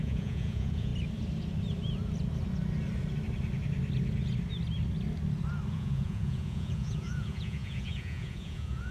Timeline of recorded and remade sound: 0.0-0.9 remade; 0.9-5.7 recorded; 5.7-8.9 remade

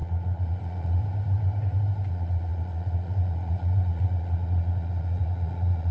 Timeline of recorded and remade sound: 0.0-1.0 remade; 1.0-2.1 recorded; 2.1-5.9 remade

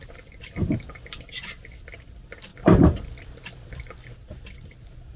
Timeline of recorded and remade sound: 0.0-2.5 recorded; 2.5-5.2 remade